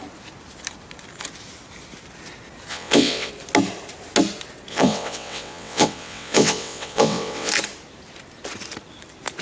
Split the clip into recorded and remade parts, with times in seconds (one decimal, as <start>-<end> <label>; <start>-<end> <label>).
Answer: 0.0-2.7 recorded; 2.7-3.3 remade; 3.3-4.7 recorded; 4.7-7.5 remade; 7.5-9.4 recorded